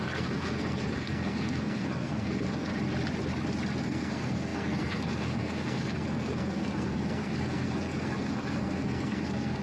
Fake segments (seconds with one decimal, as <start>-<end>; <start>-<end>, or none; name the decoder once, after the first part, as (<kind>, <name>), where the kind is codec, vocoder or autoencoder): 0.0-2.7 (codec, SNAC); 3.8-9.6